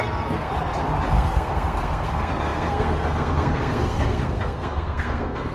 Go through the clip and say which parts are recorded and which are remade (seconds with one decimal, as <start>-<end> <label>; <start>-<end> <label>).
0.0-0.5 remade; 0.5-1.1 recorded; 1.1-5.5 remade